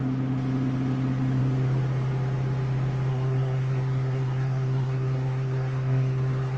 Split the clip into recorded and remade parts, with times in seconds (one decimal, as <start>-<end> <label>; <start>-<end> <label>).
0.0-3.1 recorded; 3.1-6.6 remade